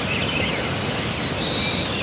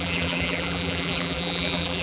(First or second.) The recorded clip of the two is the first